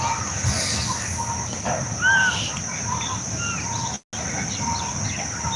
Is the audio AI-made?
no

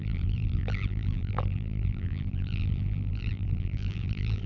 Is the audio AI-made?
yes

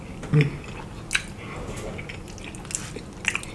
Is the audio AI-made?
no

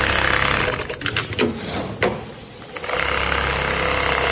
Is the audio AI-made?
no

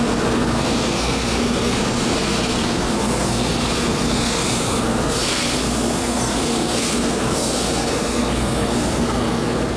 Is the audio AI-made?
yes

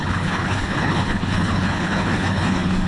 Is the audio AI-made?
yes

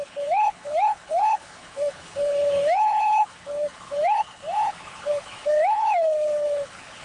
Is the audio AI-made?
yes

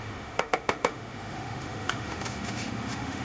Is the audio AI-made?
yes